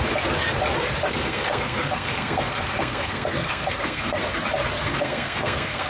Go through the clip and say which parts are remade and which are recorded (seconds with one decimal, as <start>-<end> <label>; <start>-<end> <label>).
0.0-1.1 recorded; 1.1-4.2 remade; 4.2-4.8 recorded; 4.8-5.9 remade